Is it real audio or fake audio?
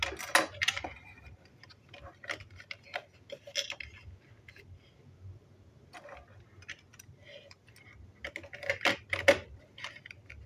real